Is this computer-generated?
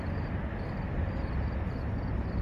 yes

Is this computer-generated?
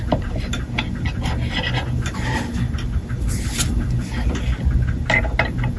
no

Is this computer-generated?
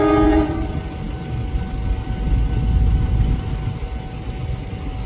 no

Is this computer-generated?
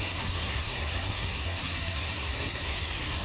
yes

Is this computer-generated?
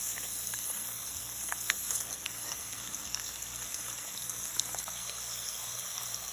yes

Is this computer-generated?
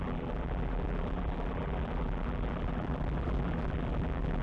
yes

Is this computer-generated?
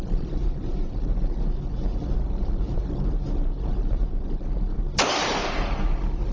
yes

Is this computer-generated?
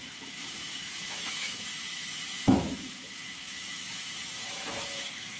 yes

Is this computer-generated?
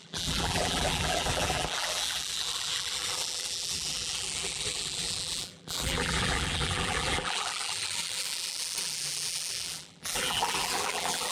yes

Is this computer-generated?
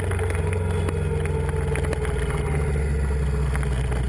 no